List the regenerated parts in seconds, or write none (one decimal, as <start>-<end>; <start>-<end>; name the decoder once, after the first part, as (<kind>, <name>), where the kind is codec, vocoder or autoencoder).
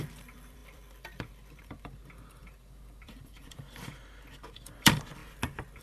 0.0-5.2 (vocoder, BigVGAN v2)